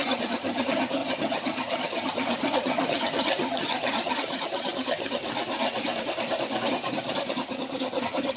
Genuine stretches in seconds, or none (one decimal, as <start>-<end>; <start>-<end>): 5.2-6.7